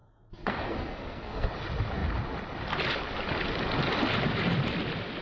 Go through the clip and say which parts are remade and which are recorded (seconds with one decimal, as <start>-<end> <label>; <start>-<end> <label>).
0.0-1.5 remade; 1.5-5.2 recorded

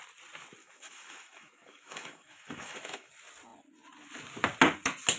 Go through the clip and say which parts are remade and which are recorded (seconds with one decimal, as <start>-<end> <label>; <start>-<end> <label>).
0.0-0.6 recorded; 0.6-3.1 remade; 3.1-5.2 recorded

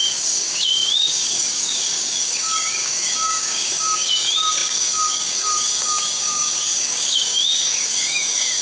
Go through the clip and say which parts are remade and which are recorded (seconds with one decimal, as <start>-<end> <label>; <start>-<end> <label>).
0.0-8.6 remade

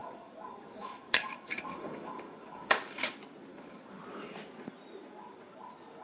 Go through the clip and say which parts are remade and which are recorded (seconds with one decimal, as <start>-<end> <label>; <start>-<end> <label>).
0.0-3.1 remade; 3.1-3.5 recorded; 3.5-4.0 remade; 4.0-6.0 recorded

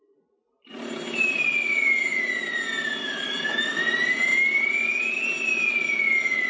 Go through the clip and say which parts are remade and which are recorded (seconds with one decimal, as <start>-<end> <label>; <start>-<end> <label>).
0.0-3.0 recorded; 3.0-3.8 remade; 3.8-6.5 recorded

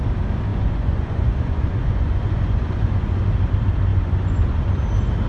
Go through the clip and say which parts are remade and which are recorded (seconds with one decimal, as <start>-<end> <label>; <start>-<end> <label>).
0.0-0.5 recorded; 0.5-3.2 remade; 3.2-3.9 recorded; 3.9-4.6 remade; 4.6-5.3 recorded

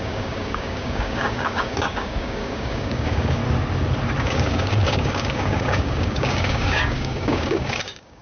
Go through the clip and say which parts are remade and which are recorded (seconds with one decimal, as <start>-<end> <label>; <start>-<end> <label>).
0.0-3.4 remade; 3.4-4.2 recorded; 4.2-8.2 remade

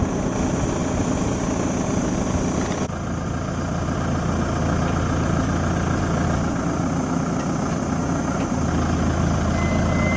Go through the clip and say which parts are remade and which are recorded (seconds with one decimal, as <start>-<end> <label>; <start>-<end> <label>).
0.0-10.2 recorded